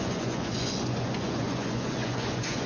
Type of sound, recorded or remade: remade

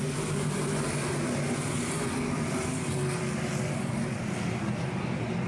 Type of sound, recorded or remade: recorded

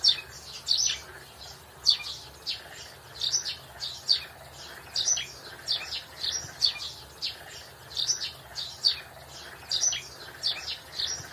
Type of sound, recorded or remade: recorded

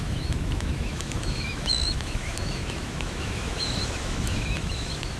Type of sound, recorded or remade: remade